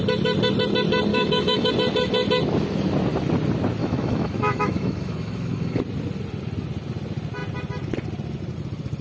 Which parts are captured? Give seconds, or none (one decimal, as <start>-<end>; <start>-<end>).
0.0-1.1; 1.7-3.8; 5.8-9.0